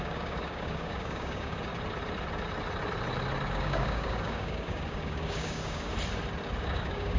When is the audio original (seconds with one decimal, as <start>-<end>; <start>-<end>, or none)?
1.7-3.5; 5.9-6.6